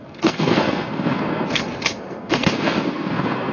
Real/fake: fake